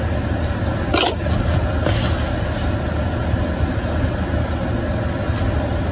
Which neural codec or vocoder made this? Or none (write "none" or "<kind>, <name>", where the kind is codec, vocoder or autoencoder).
none